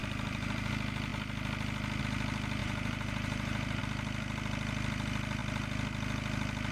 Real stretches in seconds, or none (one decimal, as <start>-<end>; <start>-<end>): 0.7-2.6; 3.8-6.7